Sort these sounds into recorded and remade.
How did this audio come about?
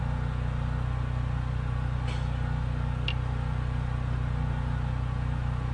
recorded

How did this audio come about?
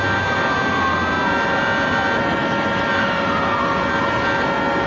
recorded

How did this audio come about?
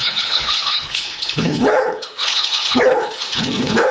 remade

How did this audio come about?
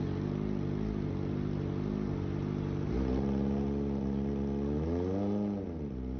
recorded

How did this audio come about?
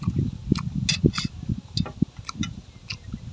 recorded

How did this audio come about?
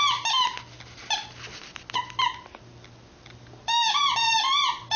recorded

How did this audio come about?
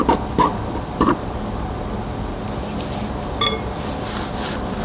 recorded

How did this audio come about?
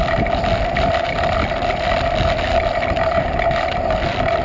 remade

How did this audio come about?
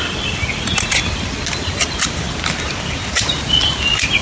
recorded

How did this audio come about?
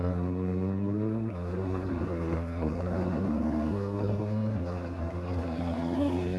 remade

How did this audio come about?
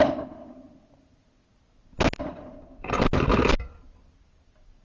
recorded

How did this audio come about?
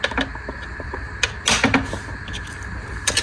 recorded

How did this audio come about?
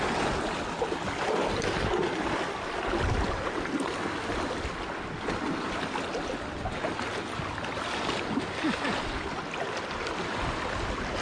recorded